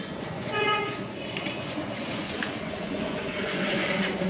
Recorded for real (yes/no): no